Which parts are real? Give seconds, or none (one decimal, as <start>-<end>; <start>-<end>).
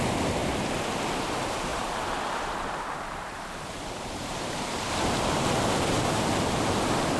0.0-1.7; 5.9-7.2